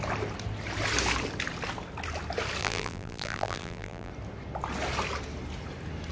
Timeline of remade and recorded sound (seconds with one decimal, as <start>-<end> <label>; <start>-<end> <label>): 0.0-2.6 recorded; 2.6-4.1 remade; 4.1-6.1 recorded